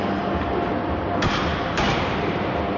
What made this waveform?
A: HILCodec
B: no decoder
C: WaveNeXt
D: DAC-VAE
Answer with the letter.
B